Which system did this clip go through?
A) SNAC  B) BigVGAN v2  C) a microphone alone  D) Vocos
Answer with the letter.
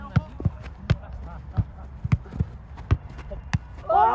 C